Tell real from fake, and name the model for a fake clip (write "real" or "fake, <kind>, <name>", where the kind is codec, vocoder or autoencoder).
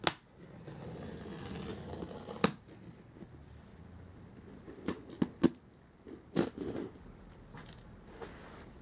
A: real